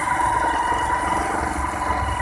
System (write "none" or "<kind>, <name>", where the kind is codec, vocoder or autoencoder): none